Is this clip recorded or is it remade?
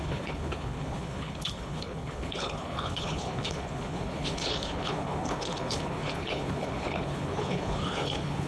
remade